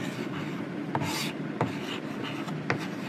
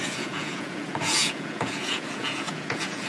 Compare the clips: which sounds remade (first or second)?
second